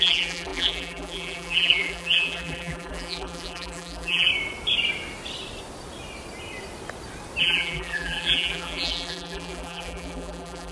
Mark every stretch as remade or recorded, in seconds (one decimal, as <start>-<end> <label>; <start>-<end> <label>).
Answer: 0.0-4.3 remade; 4.3-7.4 recorded; 7.4-10.7 remade